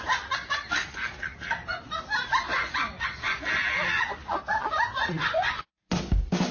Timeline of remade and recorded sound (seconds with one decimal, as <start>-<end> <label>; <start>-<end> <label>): 0.0-2.5 recorded; 2.5-3.4 remade; 3.4-5.0 recorded; 5.0-6.0 remade; 6.0-6.5 recorded